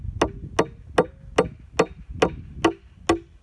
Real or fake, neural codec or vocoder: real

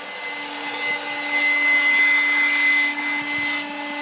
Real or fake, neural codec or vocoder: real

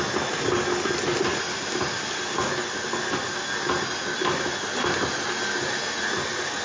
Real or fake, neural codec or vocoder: real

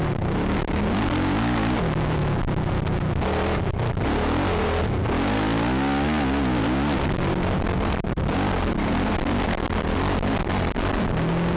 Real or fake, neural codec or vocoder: real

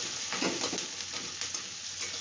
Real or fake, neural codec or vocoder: real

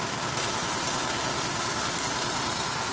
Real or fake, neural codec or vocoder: real